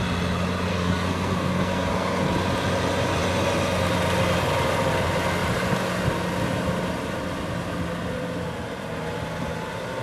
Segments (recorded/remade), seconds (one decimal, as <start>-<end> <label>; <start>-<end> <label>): 0.0-0.7 recorded; 0.7-2.3 remade; 2.3-10.0 recorded